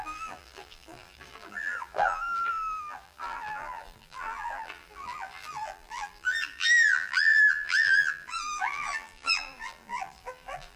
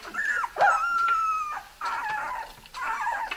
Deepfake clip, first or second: first